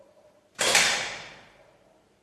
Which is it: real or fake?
fake